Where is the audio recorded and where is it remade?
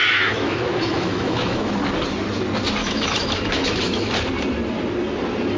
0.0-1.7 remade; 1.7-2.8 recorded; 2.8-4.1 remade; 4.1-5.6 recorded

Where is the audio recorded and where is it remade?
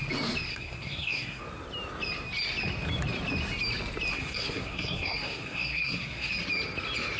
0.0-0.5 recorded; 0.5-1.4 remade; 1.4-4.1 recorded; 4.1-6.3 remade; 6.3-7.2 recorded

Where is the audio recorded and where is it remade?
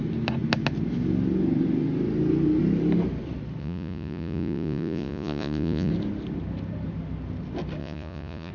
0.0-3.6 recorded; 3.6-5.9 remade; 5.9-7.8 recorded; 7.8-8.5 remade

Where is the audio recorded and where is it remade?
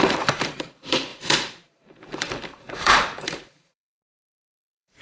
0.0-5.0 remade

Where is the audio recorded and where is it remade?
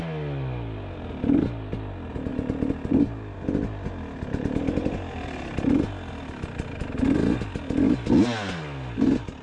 0.0-9.4 recorded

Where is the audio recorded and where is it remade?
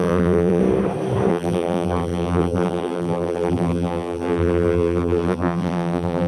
0.0-0.6 remade; 0.6-1.3 recorded; 1.3-6.3 remade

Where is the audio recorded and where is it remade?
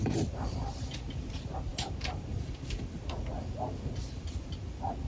0.0-5.1 remade